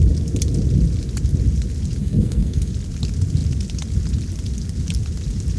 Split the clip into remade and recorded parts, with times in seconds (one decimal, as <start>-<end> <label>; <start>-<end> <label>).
0.0-2.0 recorded; 2.0-2.7 remade; 2.7-5.6 recorded